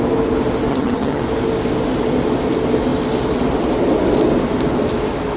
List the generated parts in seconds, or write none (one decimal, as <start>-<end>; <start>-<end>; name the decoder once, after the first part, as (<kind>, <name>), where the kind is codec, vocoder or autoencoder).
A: 0.7-1.2 (vocoder, HiFi-GAN)